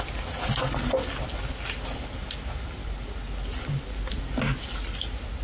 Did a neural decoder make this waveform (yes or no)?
no